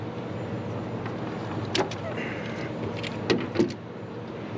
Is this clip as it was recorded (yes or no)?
yes